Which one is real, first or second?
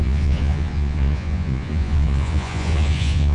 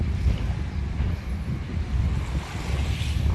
second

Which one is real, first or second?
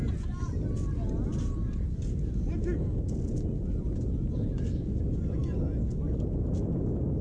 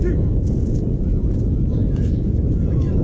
first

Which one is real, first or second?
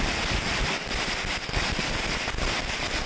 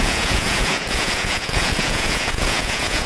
first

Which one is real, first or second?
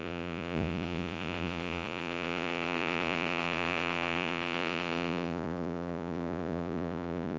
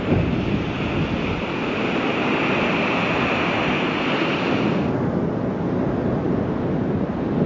second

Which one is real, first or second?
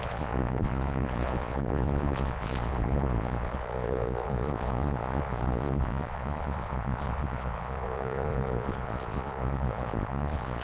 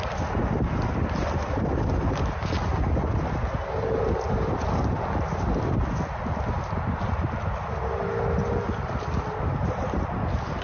second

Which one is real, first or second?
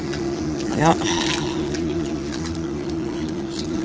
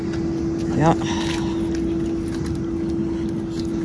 second